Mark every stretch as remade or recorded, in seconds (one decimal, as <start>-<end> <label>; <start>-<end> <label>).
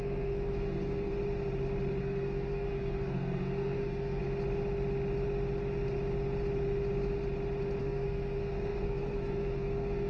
0.0-1.1 remade; 1.1-2.0 recorded; 2.0-4.2 remade; 4.2-7.8 recorded; 7.8-10.1 remade